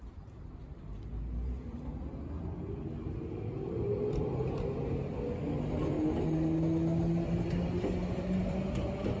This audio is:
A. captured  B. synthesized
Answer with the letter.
A